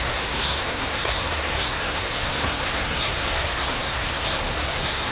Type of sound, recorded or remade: remade